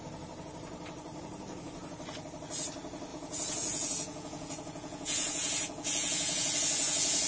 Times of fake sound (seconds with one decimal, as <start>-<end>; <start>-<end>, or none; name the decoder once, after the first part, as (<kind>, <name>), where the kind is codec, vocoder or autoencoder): 3.1-7.3 (vocoder, Vocos)